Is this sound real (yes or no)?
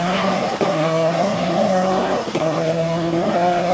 no